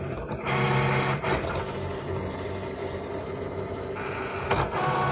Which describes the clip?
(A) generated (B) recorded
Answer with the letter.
B